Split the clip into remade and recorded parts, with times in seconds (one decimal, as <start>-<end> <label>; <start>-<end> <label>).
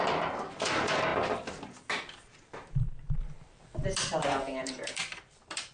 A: 0.0-1.1 remade; 1.1-1.9 recorded; 1.9-5.7 remade